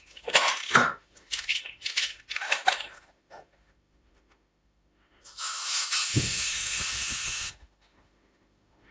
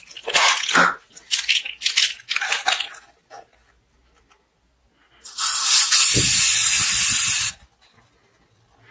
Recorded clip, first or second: second